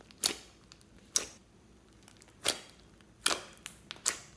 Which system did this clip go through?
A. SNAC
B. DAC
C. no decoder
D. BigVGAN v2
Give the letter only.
C